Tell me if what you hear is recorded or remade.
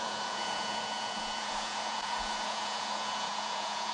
remade